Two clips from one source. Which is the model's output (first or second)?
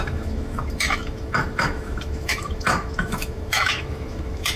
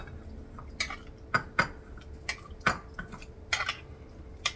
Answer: first